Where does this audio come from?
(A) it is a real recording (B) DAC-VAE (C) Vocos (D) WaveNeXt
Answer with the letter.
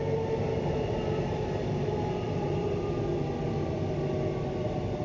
A